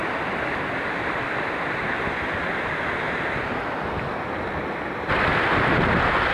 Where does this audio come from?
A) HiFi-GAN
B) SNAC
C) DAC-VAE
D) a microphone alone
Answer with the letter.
D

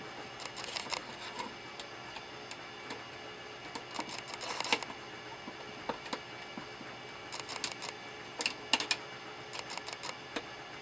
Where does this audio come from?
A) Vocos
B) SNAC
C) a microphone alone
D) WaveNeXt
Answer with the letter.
C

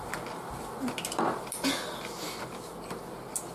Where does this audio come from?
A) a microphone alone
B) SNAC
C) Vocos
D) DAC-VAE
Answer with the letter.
A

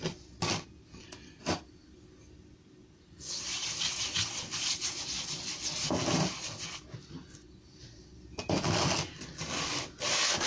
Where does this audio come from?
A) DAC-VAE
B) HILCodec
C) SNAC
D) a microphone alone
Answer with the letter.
D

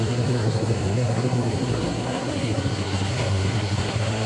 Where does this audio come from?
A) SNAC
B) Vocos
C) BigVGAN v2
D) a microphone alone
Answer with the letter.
A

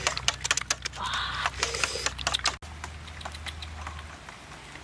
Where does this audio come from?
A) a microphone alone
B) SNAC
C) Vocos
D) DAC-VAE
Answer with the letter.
A